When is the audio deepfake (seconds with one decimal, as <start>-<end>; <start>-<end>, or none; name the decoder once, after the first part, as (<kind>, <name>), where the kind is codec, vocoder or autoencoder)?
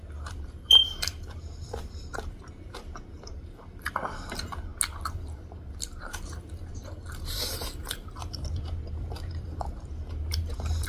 0.0-4.7 (vocoder, BigVGAN v2); 6.0-10.9